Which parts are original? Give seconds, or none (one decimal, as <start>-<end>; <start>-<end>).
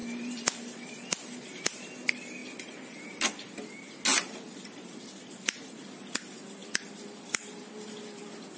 0.9-2.4; 3.6-6.6; 8.0-8.6